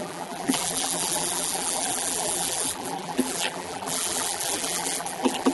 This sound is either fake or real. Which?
fake